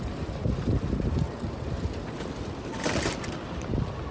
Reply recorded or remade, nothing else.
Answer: recorded